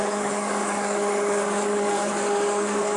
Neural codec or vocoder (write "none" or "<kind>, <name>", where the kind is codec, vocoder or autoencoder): codec, DAC